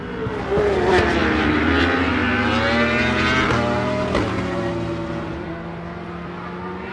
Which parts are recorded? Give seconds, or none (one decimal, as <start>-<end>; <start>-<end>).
0.0-1.2; 1.8-6.9